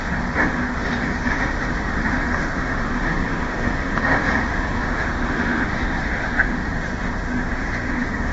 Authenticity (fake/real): fake